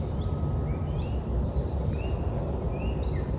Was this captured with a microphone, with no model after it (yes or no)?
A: yes